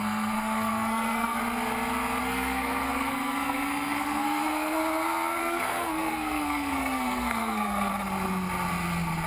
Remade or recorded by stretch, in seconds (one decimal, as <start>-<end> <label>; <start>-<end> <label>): 0.0-1.4 remade; 1.4-2.2 recorded; 2.2-4.8 remade; 4.8-5.4 recorded; 5.4-7.9 remade; 7.9-9.3 recorded